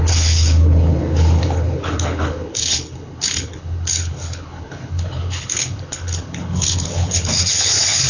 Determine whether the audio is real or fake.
fake